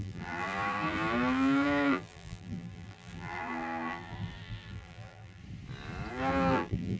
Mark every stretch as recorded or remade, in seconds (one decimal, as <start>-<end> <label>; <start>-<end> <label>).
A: 0.0-5.4 remade; 5.4-6.1 recorded; 6.1-7.0 remade